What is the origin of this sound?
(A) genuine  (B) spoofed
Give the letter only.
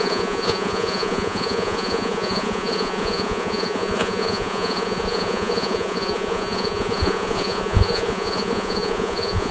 B